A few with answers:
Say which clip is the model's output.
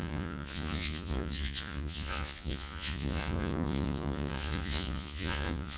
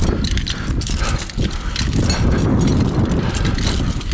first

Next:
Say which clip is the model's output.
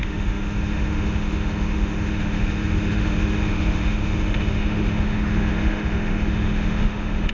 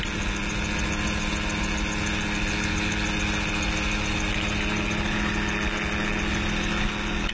first